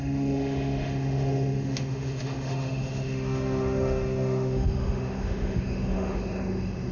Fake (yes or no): yes